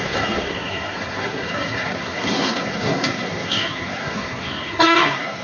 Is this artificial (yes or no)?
yes